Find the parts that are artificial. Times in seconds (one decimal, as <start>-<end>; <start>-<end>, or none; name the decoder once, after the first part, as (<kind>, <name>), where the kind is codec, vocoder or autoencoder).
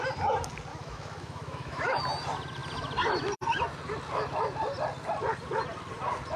0.7-2.0 (autoencoder, DAC-VAE)